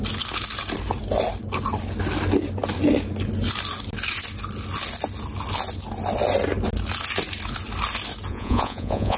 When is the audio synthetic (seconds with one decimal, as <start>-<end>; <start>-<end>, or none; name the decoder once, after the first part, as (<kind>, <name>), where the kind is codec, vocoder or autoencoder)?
8.3-9.2 (vocoder, Vocos)